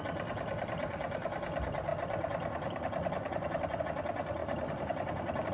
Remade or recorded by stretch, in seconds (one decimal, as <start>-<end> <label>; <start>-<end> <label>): 0.0-4.4 recorded; 4.4-5.5 remade